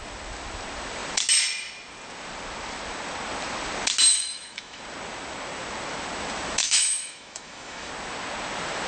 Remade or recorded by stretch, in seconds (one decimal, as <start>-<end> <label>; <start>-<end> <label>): 0.0-4.1 recorded; 4.1-4.8 remade; 4.8-6.6 recorded; 6.6-7.9 remade; 7.9-8.9 recorded

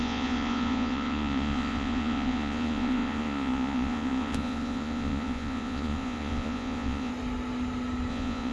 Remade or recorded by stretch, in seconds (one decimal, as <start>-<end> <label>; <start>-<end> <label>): 0.0-7.1 remade; 7.1-8.1 recorded; 8.1-8.5 remade

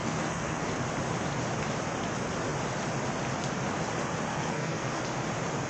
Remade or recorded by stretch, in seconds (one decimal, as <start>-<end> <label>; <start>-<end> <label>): 0.0-0.7 remade; 0.7-4.3 recorded; 4.3-5.0 remade; 5.0-5.7 recorded

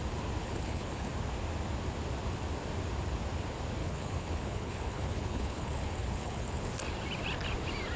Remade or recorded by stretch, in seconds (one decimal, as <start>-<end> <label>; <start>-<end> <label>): 0.0-0.4 recorded; 0.4-1.1 remade; 1.1-3.8 recorded; 3.8-6.7 remade; 6.7-8.0 recorded

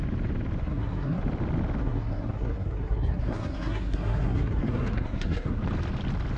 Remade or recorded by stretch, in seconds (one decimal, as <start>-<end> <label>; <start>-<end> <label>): 0.0-0.6 recorded; 0.6-1.2 remade; 1.2-1.8 recorded; 1.8-5.6 remade; 5.6-6.4 recorded